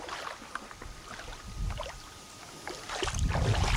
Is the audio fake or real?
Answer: real